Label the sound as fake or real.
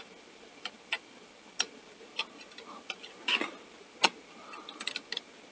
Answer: real